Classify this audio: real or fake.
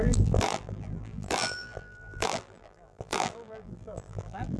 fake